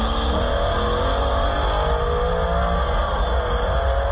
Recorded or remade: recorded